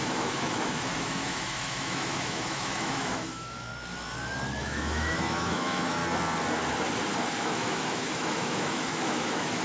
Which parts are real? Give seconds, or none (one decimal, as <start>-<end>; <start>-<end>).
3.7-4.6; 6.0-7.4

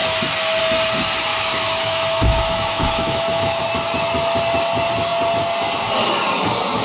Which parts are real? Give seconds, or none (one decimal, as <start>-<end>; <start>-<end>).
0.0-1.3; 3.6-6.8

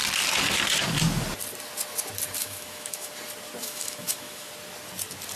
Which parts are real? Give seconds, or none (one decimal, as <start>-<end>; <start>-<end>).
0.0-2.4; 3.1-3.6; 4.5-5.4

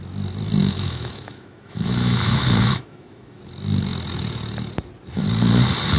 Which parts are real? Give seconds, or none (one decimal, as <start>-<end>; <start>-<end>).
0.0-0.6; 3.4-6.0